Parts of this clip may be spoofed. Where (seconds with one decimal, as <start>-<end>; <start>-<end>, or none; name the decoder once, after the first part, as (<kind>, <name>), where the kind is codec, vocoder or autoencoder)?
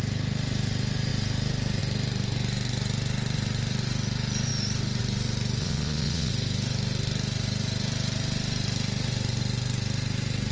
5.6-6.3 (vocoder, Vocos)